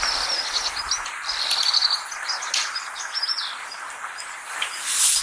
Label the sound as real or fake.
real